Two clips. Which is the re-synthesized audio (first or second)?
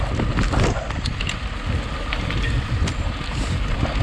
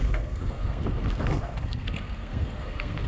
second